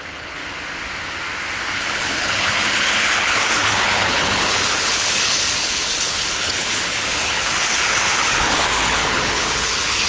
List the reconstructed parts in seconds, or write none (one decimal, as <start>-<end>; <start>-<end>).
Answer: 0.0-0.4; 1.7-10.1